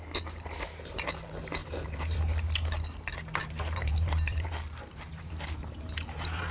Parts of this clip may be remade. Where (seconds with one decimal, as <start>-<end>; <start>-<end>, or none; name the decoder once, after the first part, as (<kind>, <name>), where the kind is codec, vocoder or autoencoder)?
1.6-2.2 (vocoder, BigVGAN v2); 3.4-6.5

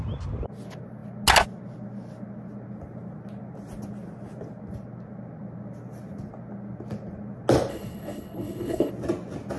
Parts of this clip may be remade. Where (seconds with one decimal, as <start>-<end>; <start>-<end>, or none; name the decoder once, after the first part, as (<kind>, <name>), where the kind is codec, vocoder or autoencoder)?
7.7-8.9 (codec, HILCodec)

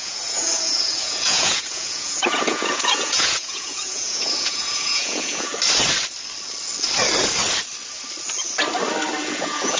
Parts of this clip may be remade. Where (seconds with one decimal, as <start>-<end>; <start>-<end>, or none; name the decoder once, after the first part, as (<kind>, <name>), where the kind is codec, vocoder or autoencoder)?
0.0-5.5 (vocoder, Vocos); 9.2-9.8

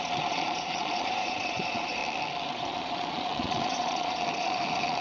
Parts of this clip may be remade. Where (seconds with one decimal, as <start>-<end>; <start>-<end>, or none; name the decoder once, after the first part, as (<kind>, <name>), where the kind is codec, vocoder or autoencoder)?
0.0-2.0 (vocoder, Vocos); 2.5-5.0

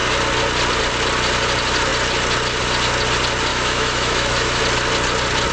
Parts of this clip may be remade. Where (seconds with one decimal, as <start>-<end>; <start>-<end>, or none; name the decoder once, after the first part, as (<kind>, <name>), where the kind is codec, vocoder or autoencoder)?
3.5-4.6 (autoencoder, DAC-VAE)

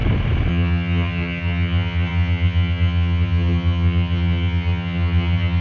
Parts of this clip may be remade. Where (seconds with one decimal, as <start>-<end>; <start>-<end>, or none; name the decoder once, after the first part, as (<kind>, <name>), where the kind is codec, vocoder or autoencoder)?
0.5-5.6 (vocoder, HiFi-GAN)

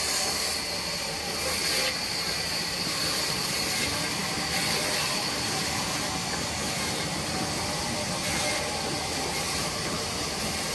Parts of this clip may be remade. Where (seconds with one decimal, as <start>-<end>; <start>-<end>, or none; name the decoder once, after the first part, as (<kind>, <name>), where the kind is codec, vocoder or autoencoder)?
0.0-0.5 (vocoder, BigVGAN v2); 2.1-4.2; 5.0-5.6; 8.9-10.7